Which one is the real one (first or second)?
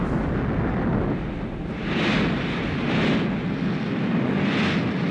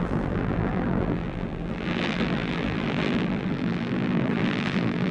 first